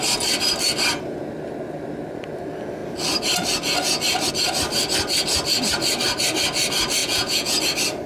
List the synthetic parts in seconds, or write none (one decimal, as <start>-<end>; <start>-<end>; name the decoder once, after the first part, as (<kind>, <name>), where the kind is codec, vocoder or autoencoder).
7.0-7.6 (vocoder, Vocos)